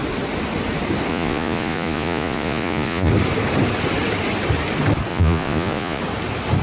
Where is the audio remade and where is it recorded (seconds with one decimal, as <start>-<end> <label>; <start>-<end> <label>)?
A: 0.0-1.1 recorded; 1.1-3.1 remade; 3.1-5.1 recorded; 5.1-6.0 remade; 6.0-6.6 recorded